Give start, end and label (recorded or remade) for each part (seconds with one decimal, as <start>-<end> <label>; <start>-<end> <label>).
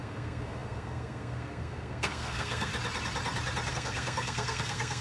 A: 0.0-2.7 remade; 2.7-3.7 recorded; 3.7-5.0 remade